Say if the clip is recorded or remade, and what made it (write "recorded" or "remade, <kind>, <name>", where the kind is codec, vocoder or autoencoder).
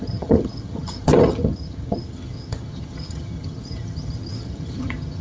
remade, vocoder, HiFi-GAN